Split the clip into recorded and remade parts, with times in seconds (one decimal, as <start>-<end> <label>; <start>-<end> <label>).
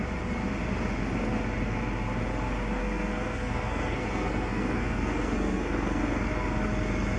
0.0-2.8 recorded; 2.8-6.3 remade; 6.3-7.2 recorded